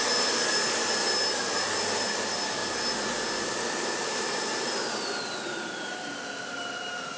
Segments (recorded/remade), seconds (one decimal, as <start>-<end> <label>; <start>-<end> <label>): 0.0-7.2 recorded